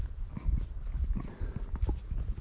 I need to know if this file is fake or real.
fake